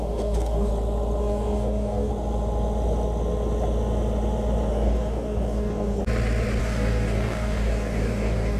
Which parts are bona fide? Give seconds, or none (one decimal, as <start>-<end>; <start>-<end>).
0.7-1.2; 2.1-4.7; 6.0-6.6